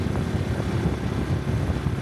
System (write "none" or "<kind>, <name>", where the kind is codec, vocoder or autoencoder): none